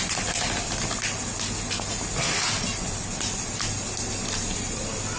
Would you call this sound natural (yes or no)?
yes